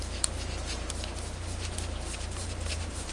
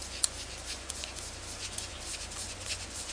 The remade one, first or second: second